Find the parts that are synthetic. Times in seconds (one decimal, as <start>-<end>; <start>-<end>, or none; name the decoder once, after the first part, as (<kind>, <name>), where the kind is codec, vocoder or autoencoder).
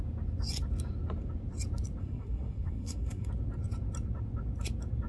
2.0-3.3 (codec, SNAC)